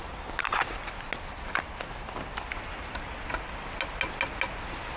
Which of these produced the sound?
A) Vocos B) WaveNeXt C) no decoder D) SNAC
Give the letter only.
C